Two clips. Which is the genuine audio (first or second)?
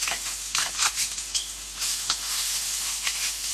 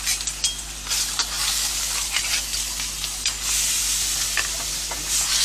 second